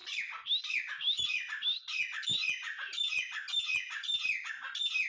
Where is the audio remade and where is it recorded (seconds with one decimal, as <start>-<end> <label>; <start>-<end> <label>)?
0.0-5.1 recorded